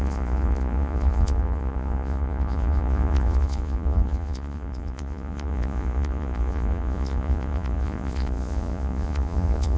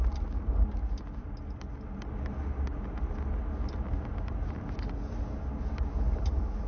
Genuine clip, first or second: second